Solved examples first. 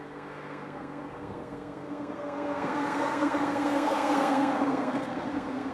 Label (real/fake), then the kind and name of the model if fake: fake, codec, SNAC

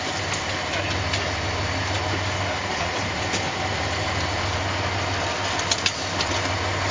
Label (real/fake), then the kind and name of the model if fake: real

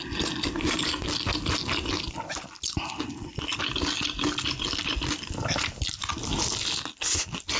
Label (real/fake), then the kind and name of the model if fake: real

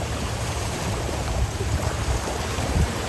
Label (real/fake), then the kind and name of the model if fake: fake, vocoder, BigVGAN v2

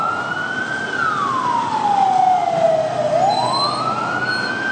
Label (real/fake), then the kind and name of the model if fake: real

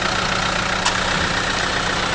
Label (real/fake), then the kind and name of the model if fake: real